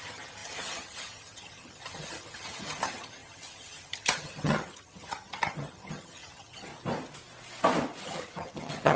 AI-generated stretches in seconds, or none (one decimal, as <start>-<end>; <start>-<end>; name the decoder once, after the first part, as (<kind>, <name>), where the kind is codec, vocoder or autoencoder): 0.0-6.7 (vocoder, HiFi-GAN); 8.0-9.0